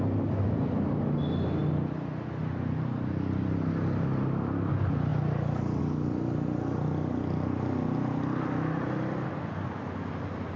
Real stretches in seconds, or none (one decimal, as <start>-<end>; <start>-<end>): 0.0-10.6